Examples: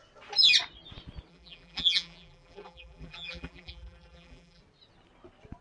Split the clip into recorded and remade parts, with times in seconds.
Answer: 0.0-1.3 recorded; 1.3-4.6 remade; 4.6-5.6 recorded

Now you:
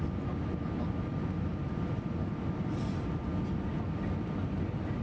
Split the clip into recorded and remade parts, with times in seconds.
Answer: 0.0-5.0 recorded

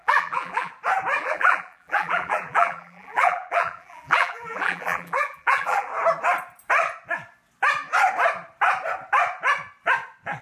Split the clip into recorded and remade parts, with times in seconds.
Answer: 0.0-0.7 remade; 0.7-1.2 recorded; 1.2-5.9 remade; 5.9-10.4 recorded

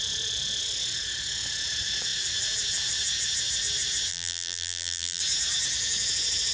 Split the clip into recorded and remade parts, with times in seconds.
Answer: 0.0-4.1 recorded; 4.1-5.2 remade; 5.2-6.5 recorded